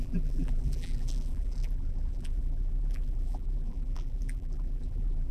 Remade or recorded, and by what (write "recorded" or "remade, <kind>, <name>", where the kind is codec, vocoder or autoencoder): remade, vocoder, BigVGAN v2